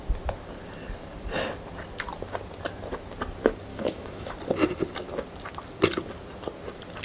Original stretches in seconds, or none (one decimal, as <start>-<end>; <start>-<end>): 0.0-3.7; 4.3-7.0